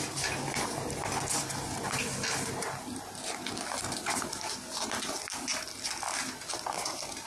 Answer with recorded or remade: recorded